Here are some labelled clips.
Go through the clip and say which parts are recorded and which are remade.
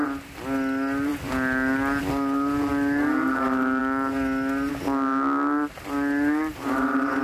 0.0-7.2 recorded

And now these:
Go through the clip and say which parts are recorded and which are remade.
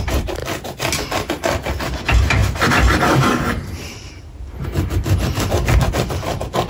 0.0-6.7 recorded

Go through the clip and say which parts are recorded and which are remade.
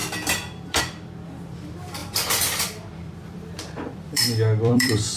0.0-0.8 remade; 0.8-2.0 recorded; 2.0-5.2 remade